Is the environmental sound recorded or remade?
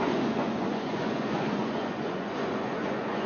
remade